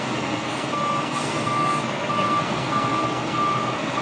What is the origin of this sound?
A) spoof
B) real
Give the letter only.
A